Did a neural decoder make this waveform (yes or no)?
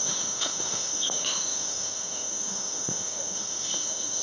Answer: yes